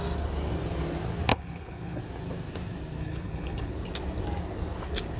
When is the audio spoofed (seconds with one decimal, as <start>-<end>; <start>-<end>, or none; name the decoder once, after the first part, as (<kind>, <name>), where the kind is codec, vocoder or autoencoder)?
1.3-2.0 (codec, HILCodec); 3.0-3.7